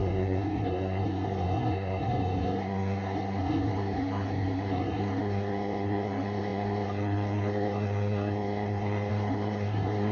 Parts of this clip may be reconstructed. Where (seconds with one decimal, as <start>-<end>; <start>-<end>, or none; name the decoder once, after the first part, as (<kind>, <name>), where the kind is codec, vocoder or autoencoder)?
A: 0.0-10.1 (codec, SNAC)